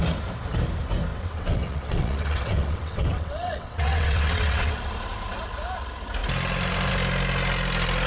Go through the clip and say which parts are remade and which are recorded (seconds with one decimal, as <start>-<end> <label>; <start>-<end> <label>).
0.0-1.1 recorded; 1.1-4.7 remade; 4.7-8.1 recorded